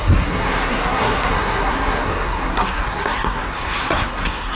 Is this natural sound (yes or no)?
no